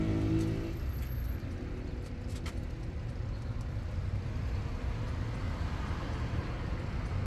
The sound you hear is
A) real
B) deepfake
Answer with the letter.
A